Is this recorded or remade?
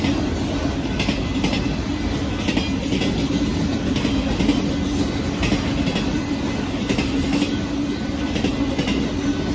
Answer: recorded